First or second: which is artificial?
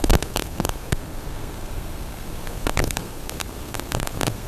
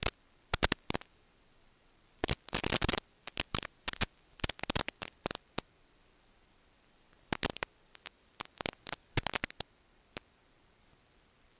first